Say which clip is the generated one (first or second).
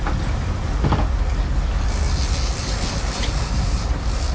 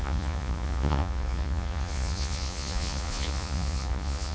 second